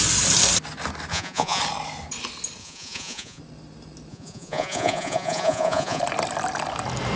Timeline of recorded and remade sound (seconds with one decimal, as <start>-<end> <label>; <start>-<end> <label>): 0.0-1.1 recorded; 1.1-1.6 remade; 1.6-2.6 recorded; 2.6-3.4 remade; 3.4-4.1 recorded; 4.1-6.0 remade; 6.0-7.2 recorded